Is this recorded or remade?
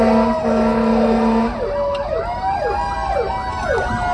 recorded